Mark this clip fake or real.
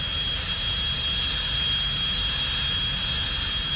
real